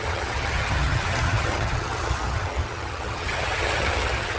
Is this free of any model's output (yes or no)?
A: no